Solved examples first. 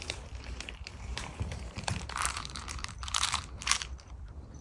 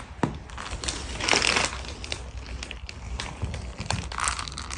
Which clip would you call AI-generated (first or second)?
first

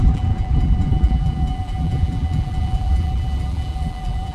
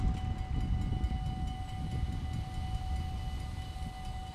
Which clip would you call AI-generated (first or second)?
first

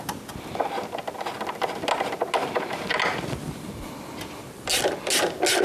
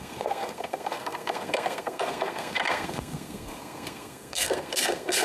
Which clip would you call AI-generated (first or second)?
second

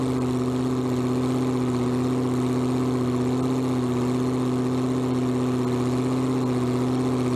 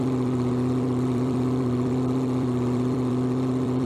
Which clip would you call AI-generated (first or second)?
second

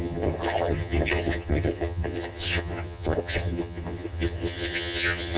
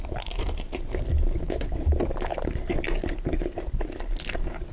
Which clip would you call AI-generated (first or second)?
first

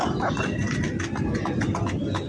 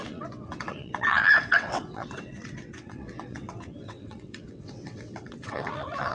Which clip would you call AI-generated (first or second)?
second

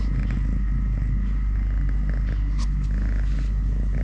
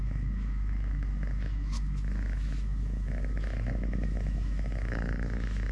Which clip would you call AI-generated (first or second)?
second